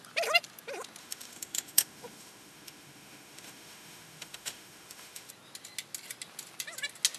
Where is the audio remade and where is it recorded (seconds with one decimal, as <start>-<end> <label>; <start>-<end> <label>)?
0.0-1.0 recorded; 1.0-5.3 remade; 5.3-7.2 recorded